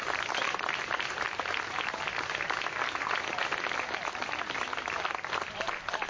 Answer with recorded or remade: recorded